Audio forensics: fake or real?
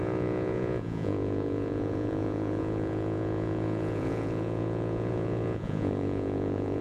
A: fake